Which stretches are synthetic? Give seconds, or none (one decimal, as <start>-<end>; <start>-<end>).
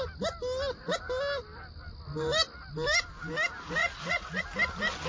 3.8-4.4